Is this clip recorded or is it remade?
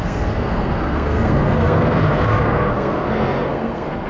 remade